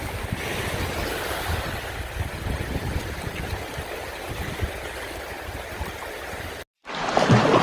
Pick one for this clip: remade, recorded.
recorded